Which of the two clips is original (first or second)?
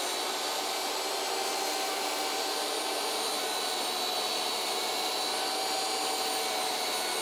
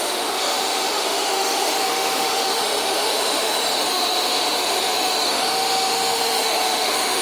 first